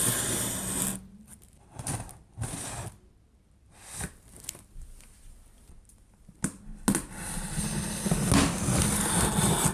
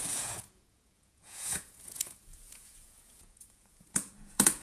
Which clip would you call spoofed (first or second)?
second